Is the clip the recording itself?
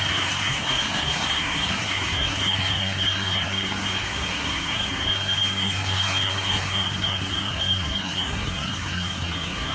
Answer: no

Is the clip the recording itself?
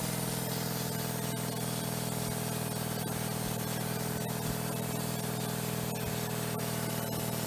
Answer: yes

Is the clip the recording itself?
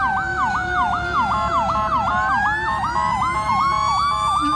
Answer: yes